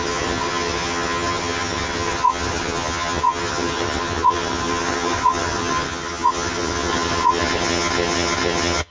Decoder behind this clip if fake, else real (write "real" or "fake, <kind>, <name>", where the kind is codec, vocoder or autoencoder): fake, vocoder, HiFi-GAN